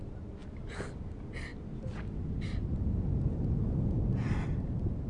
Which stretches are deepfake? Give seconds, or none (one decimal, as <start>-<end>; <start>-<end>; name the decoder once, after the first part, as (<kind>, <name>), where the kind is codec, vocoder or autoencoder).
none